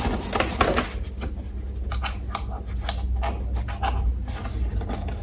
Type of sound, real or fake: real